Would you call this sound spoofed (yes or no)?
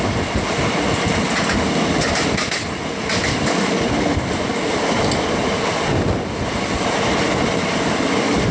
no